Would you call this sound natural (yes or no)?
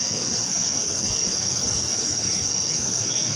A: no